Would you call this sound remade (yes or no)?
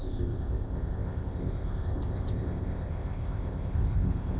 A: yes